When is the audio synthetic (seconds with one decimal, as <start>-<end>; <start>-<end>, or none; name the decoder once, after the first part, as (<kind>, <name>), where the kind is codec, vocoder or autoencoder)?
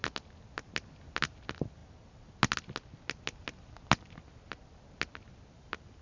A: none